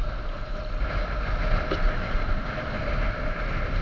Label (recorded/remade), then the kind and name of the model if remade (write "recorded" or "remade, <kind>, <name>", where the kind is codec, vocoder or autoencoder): recorded